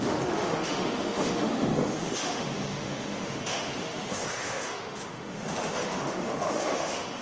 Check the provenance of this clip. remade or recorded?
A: remade